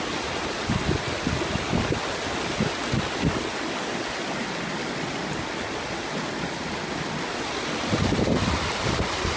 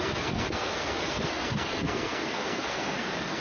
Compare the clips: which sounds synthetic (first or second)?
second